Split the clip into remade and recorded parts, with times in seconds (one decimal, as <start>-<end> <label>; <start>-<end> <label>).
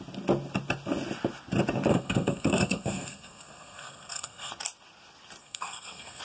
0.0-1.9 recorded; 1.9-4.5 remade; 4.5-5.4 recorded; 5.4-6.2 remade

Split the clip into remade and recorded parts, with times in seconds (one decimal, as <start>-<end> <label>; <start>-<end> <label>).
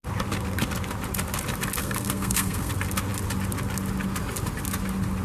0.0-1.8 recorded; 1.8-2.7 remade; 2.7-5.2 recorded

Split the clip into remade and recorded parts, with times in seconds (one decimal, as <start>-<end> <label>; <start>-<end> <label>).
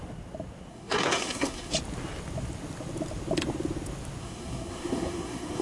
0.0-0.7 recorded; 0.7-1.7 remade; 1.7-4.2 recorded; 4.2-5.6 remade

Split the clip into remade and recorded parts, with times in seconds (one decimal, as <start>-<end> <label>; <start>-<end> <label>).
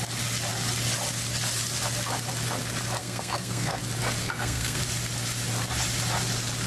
0.0-3.0 recorded; 3.0-3.8 remade; 3.8-4.2 recorded; 4.2-4.8 remade; 4.8-6.7 recorded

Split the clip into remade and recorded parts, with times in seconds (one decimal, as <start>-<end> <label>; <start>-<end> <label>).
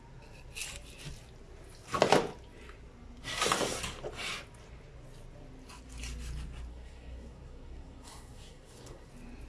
0.0-6.7 recorded; 6.7-9.1 remade; 9.1-9.5 recorded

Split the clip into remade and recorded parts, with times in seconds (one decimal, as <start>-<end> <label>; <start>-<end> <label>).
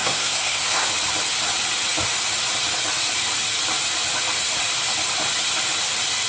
0.0-0.9 remade; 0.9-6.3 recorded